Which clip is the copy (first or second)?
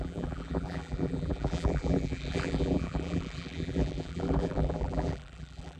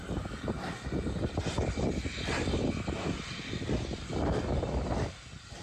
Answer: first